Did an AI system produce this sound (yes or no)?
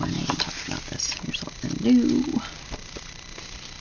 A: no